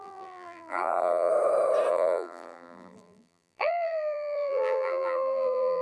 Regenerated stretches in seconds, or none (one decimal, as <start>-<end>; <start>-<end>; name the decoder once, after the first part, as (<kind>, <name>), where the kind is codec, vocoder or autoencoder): 0.0-1.3 (vocoder, BigVGAN v2); 1.9-5.8